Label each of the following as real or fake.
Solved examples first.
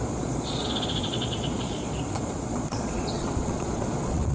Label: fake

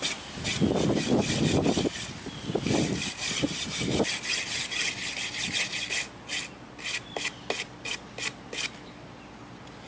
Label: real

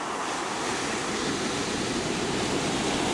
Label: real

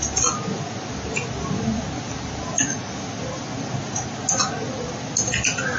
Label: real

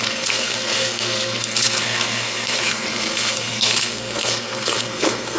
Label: fake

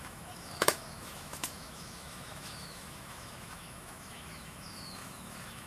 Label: fake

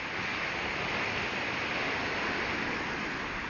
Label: real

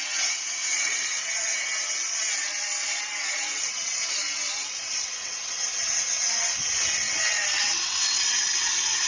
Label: fake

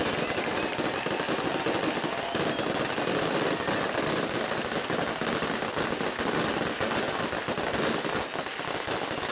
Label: real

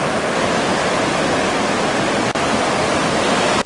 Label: real